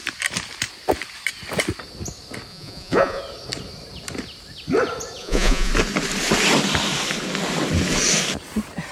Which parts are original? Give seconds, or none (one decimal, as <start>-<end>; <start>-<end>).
0.0-2.5; 3.2-5.2; 5.7-8.9